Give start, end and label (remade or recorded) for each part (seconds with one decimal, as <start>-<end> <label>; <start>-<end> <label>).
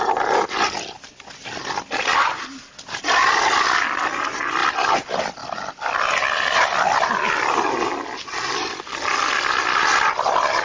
0.0-10.6 recorded